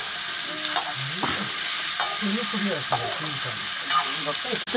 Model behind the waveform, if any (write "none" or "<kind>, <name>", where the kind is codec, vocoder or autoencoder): none